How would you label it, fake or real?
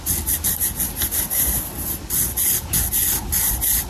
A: real